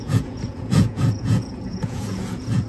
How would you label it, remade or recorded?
remade